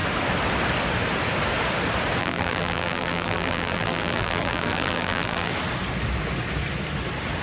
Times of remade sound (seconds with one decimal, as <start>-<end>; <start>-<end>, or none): 2.2-5.5